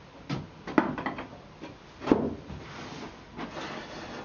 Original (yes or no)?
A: yes